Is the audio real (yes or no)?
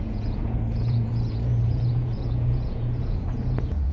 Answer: no